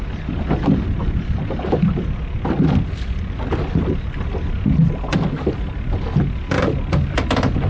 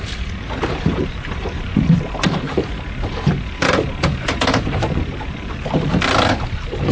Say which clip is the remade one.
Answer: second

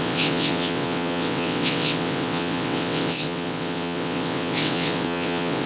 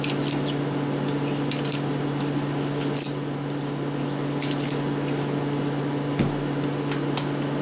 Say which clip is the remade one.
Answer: first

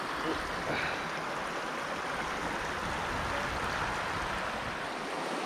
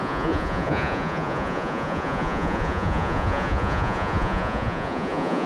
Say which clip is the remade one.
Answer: second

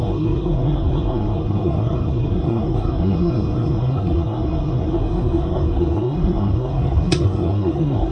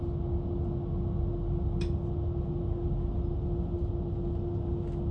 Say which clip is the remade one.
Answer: first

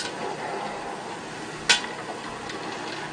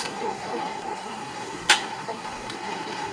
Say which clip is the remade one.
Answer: second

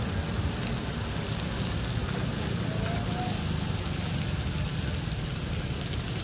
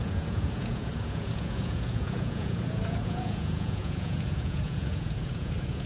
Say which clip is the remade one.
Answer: second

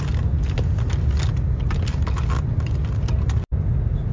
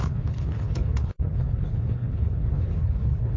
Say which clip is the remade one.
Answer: second